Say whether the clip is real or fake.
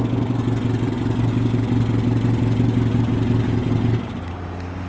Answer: real